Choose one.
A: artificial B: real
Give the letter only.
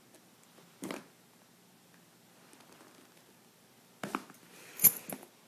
B